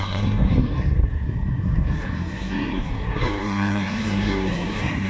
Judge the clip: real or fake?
fake